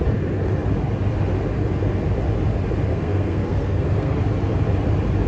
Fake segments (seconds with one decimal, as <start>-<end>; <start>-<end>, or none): 2.9-4.2